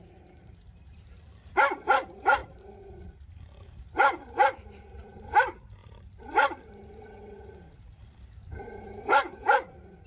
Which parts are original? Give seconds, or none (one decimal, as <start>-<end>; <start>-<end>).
2.4-3.6